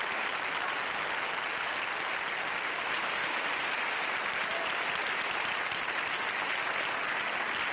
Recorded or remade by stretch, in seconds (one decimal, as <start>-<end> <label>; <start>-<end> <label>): 0.0-3.2 recorded; 3.2-3.7 remade; 3.7-7.7 recorded

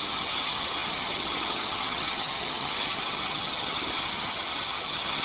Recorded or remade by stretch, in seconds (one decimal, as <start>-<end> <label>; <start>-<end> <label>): 0.0-5.2 remade

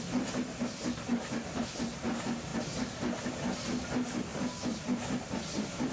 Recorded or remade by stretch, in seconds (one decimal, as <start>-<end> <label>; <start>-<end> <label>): 0.0-5.9 recorded

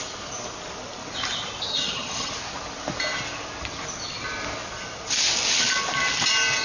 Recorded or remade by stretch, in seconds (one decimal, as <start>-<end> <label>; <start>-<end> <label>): 0.0-1.7 recorded; 1.7-2.3 remade; 2.3-6.6 recorded

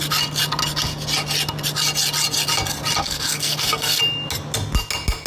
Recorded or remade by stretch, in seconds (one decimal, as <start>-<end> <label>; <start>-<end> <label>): 0.0-3.0 recorded; 3.0-4.0 remade; 4.0-5.3 recorded

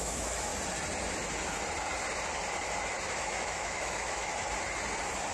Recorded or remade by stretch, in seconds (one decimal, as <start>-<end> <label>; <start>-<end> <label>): 0.0-0.5 remade; 0.5-3.1 recorded; 3.1-4.3 remade; 4.3-5.3 recorded

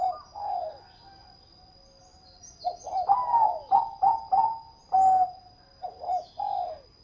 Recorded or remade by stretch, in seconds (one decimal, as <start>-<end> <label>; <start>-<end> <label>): 0.0-7.0 recorded